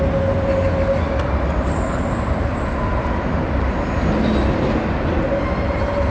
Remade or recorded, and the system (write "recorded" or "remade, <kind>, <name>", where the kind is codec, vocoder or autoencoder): recorded